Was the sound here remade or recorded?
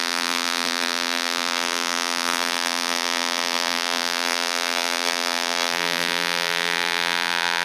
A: remade